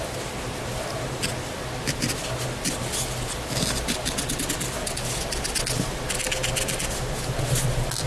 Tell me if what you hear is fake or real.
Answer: real